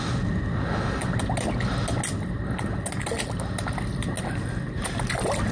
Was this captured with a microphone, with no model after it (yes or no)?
yes